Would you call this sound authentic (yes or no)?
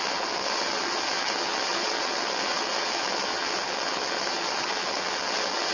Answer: no